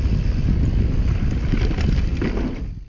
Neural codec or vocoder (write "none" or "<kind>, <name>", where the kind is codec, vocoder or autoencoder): none